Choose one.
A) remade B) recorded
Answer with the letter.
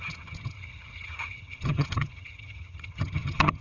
A